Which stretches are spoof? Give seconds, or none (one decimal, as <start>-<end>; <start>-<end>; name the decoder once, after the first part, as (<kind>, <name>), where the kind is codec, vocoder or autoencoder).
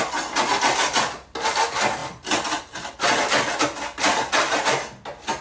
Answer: none